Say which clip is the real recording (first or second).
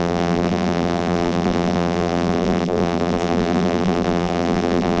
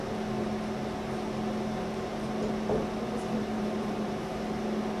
second